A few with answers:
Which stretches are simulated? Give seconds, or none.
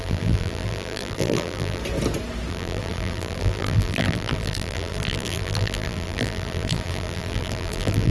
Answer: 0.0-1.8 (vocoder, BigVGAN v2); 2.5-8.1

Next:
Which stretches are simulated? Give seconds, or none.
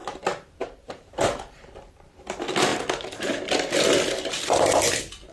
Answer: 0.0-2.1 (vocoder, BigVGAN v2)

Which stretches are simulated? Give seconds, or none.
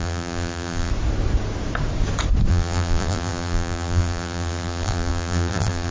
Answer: 0.0-0.9 (vocoder, BigVGAN v2); 2.5-5.9